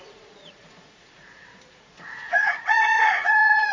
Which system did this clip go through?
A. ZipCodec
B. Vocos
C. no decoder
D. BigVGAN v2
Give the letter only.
B